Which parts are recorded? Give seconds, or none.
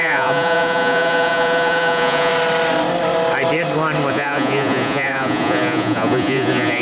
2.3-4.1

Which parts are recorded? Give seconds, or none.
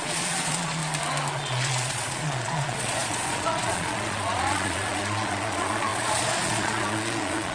0.8-1.3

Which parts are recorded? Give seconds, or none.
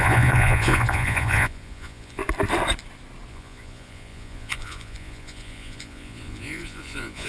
2.2-3.3